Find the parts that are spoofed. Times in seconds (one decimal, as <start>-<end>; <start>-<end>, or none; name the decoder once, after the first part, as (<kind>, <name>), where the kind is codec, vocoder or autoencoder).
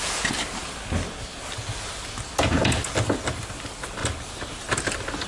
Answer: none